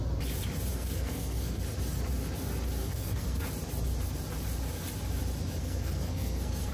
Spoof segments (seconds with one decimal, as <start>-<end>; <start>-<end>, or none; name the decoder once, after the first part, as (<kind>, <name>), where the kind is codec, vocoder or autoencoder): 0.7-1.6 (codec, SNAC); 2.8-3.4; 5.6-6.7